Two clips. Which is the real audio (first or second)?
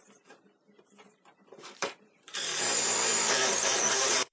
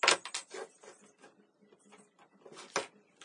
second